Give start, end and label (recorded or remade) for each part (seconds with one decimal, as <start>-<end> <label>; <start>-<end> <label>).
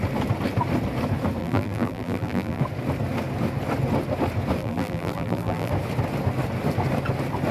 0.0-1.4 recorded; 1.4-2.6 remade; 2.6-4.6 recorded; 4.6-5.7 remade; 5.7-7.5 recorded